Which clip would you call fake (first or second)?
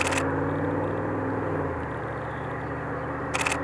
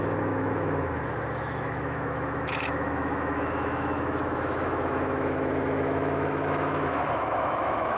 second